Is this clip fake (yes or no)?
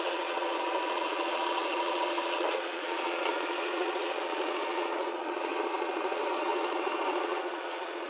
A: yes